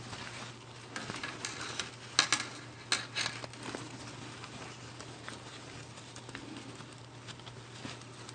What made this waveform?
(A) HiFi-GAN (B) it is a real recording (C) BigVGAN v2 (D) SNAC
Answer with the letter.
B